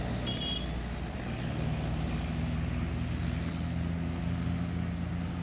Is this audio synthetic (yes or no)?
no